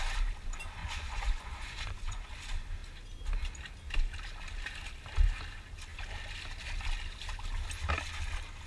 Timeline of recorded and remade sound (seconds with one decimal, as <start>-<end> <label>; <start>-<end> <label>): 0.0-0.8 recorded; 0.8-2.3 remade; 2.3-8.7 recorded